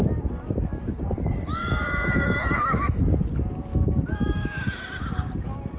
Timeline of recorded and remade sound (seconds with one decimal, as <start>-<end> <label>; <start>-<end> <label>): 0.0-1.6 recorded; 1.6-3.0 remade; 3.0-3.7 recorded; 3.7-4.6 remade; 4.6-5.8 recorded